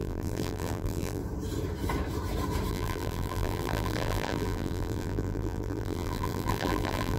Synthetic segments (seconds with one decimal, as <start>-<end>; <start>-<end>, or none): 0.0-1.2; 2.7-7.2